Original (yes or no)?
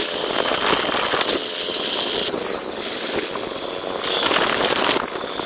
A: yes